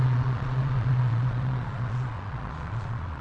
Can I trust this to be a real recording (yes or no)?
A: no